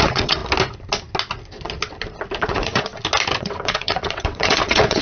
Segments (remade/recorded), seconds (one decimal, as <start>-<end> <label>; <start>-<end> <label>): 0.0-0.4 remade; 0.4-2.4 recorded; 2.4-2.9 remade; 2.9-3.4 recorded; 3.4-5.0 remade